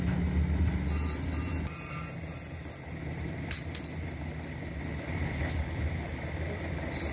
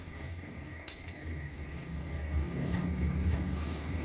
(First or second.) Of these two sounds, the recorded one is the first